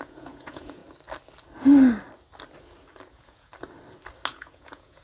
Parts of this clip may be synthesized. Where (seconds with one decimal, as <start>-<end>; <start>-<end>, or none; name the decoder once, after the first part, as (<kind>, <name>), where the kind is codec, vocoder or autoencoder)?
0.0-0.8 (vocoder, Vocos); 3.1-3.5; 4.3-5.0